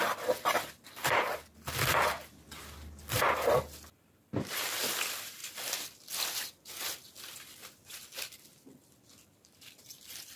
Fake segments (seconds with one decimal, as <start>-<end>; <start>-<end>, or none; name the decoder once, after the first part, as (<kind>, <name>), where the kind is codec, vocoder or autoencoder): 0.0-5.4 (vocoder, BigVGAN v2); 6.4-10.4